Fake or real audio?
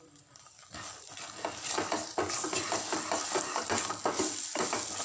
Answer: real